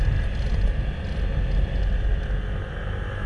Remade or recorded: recorded